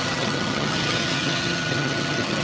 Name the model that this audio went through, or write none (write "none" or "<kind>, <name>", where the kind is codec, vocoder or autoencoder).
vocoder, HiFi-GAN